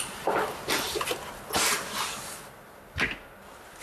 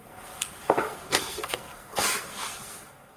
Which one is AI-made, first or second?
second